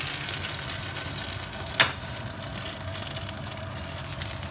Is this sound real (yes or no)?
yes